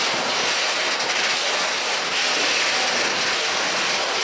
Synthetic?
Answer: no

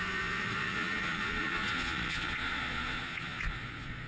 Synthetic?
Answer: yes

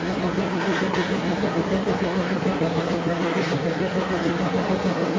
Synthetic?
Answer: yes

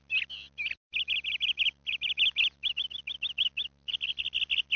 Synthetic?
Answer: no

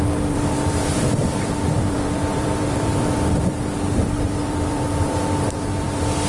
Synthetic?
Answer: yes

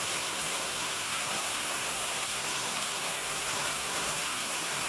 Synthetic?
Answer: yes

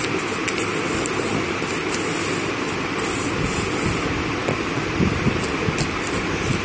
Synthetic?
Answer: no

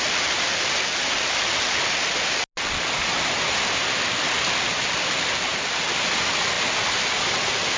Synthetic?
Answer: no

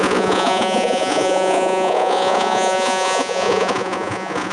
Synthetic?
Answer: yes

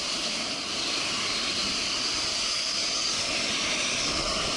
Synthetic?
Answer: no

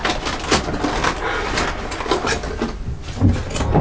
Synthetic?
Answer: no